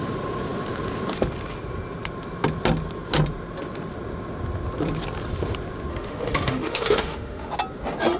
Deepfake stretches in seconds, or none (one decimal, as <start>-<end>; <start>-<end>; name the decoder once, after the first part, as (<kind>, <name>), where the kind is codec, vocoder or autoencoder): 5.9-7.5 (autoencoder, DAC-VAE)